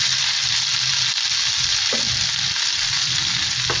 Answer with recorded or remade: recorded